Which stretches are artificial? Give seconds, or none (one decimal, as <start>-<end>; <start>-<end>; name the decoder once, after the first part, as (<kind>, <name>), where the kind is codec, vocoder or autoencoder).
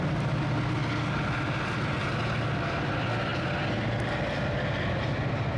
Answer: none